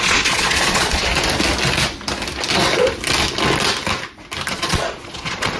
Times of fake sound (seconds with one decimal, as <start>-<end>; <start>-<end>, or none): 0.0-1.1; 4.5-5.6